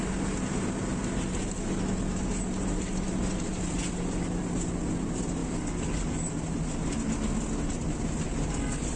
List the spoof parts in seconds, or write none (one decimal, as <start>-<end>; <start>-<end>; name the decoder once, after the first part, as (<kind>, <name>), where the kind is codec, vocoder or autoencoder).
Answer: none